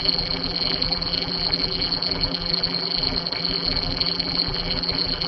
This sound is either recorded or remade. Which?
remade